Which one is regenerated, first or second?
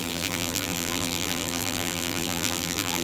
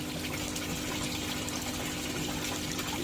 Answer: first